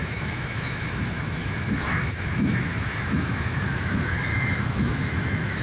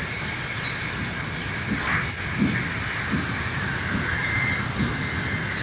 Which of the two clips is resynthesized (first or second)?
first